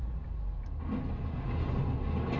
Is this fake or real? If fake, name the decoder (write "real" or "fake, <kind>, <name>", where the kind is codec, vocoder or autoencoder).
real